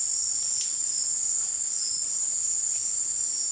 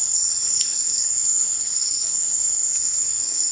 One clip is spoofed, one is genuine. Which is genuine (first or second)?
first